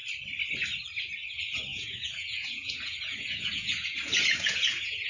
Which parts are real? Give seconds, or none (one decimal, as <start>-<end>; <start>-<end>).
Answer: 0.0-1.7